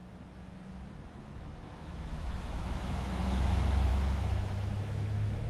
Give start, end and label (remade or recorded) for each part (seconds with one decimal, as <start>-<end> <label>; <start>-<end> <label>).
0.0-1.2 recorded; 1.2-5.5 remade